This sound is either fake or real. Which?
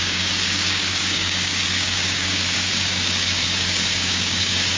fake